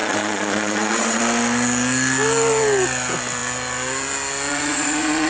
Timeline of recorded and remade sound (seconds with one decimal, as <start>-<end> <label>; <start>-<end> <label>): 0.0-1.2 remade; 1.2-4.5 recorded; 4.5-5.3 remade